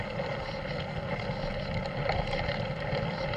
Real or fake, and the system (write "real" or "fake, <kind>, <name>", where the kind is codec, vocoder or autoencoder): real